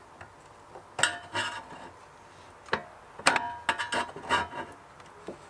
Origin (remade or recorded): recorded